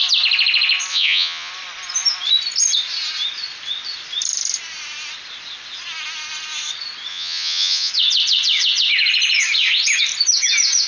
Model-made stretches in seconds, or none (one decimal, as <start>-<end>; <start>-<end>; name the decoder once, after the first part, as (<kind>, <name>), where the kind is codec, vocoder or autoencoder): 0.9-1.5 (vocoder, Vocos); 7.1-7.9